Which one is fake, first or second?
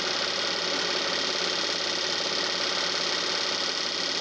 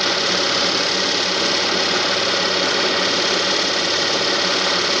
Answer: second